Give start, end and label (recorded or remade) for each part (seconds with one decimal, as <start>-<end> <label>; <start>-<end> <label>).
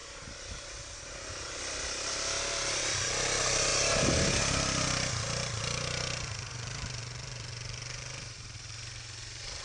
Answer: 0.0-2.8 recorded; 2.8-3.7 remade; 3.7-6.5 recorded; 6.5-9.6 remade